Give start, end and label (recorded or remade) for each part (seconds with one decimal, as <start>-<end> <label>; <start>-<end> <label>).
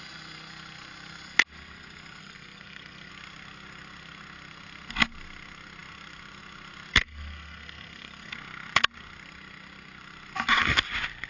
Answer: 0.0-2.2 recorded; 2.2-3.1 remade; 3.1-6.9 recorded; 6.9-8.3 remade; 8.3-11.3 recorded